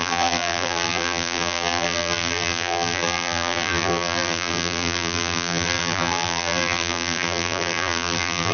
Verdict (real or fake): fake